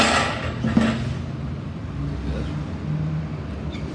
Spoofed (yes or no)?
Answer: no